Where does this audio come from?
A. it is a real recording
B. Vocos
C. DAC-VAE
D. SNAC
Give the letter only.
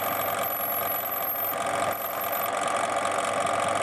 A